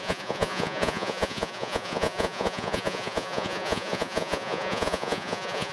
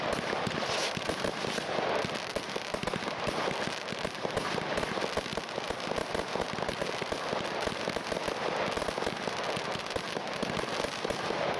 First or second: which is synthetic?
first